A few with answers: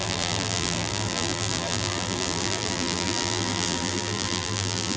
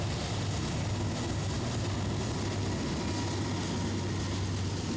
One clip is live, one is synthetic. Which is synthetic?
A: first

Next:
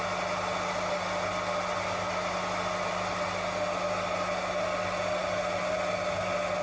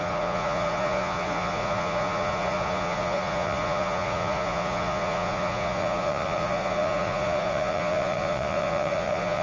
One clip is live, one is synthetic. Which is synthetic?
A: second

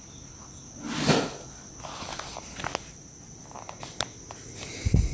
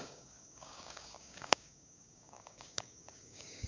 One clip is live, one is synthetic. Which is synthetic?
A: second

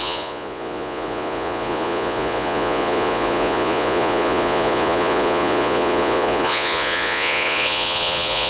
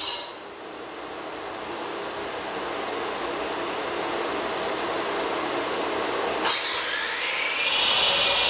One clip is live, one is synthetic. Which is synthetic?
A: first